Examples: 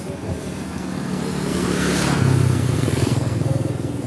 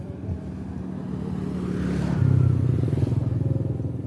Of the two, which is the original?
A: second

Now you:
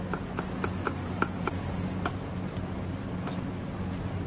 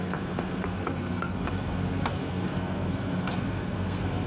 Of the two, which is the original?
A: first